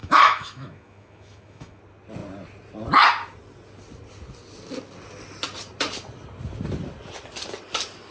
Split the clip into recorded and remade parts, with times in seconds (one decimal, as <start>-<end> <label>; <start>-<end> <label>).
0.0-1.8 remade; 1.8-8.1 recorded